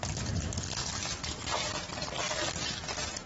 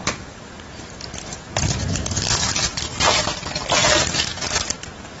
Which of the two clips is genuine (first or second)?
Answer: first